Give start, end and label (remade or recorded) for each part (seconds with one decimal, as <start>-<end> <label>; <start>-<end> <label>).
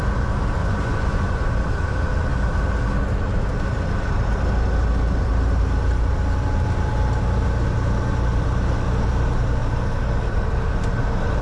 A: 0.0-0.6 recorded; 0.6-1.3 remade; 1.3-11.4 recorded